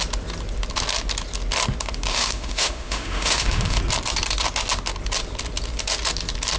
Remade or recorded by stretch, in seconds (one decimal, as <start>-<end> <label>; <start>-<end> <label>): 0.0-2.1 recorded; 2.1-3.8 remade; 3.8-6.6 recorded